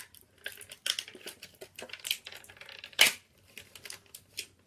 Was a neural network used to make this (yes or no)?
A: no